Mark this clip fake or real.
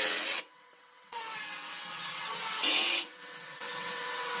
fake